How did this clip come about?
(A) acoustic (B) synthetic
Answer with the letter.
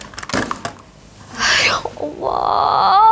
A